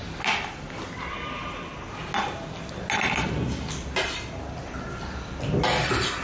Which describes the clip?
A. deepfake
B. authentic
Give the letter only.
B